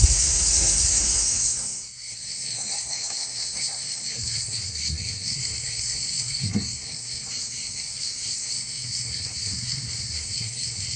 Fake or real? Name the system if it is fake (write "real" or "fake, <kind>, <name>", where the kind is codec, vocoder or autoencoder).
fake, codec, SNAC